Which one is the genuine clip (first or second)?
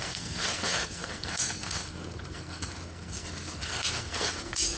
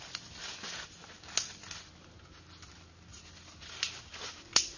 second